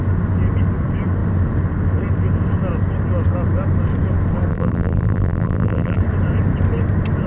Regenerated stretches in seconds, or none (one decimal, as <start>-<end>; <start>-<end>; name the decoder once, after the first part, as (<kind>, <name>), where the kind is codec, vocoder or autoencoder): 4.5-6.0 (vocoder, BigVGAN v2)